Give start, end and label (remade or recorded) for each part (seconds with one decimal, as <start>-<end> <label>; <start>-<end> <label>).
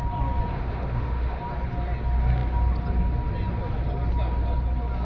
0.0-0.5 recorded; 0.5-1.4 remade; 1.4-5.0 recorded